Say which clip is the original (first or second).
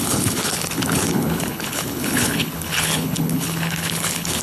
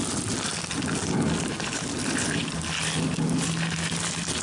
second